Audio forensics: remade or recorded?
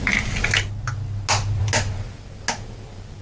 recorded